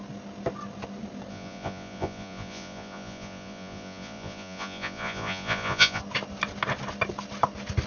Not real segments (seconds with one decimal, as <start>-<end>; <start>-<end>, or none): 1.3-6.0